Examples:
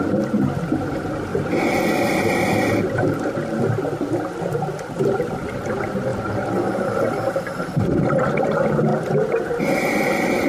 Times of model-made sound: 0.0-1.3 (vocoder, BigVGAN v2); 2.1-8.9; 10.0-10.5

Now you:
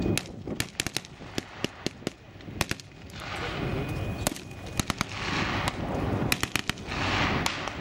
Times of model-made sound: none

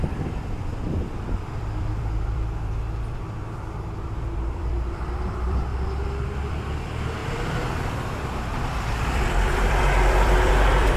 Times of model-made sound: 0.0-11.0 (vocoder, BigVGAN v2)

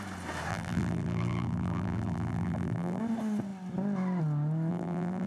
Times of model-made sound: 0.5-3.0 (vocoder, BigVGAN v2); 4.7-5.3